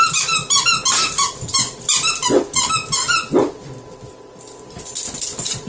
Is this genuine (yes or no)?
yes